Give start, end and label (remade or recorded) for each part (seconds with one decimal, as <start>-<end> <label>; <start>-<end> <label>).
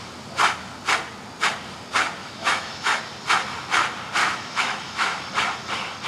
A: 0.0-2.2 recorded; 2.2-3.0 remade; 3.0-4.2 recorded; 4.2-5.2 remade; 5.2-6.1 recorded